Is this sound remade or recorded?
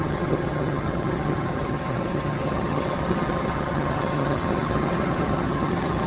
remade